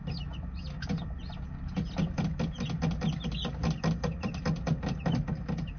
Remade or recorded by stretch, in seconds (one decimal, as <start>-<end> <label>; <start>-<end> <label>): 0.0-5.8 recorded